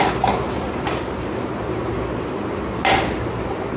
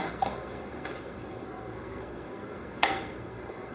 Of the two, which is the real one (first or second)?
first